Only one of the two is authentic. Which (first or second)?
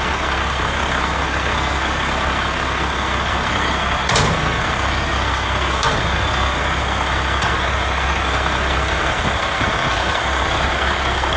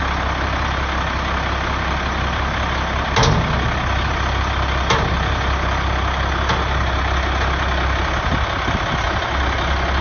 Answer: second